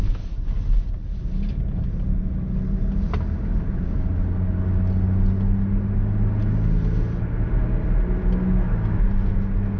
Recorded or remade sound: recorded